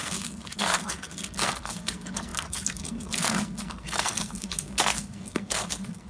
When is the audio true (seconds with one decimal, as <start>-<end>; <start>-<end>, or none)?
none